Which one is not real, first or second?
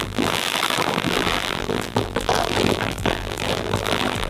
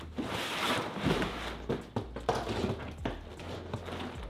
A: first